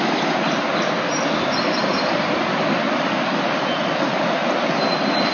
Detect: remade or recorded recorded